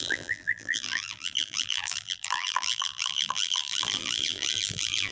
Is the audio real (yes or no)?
no